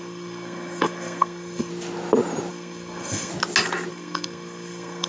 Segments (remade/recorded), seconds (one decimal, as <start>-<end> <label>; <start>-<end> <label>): 0.0-1.7 remade; 1.7-2.5 recorded; 2.5-3.3 remade; 3.3-3.9 recorded; 3.9-5.1 remade